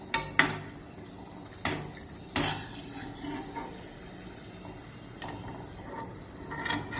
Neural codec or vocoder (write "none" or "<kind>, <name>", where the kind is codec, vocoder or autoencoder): none